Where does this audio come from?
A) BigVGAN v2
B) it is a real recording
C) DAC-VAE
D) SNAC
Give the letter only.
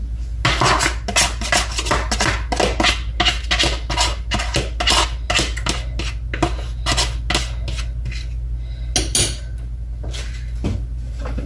B